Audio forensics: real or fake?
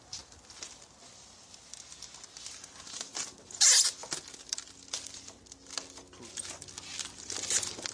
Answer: real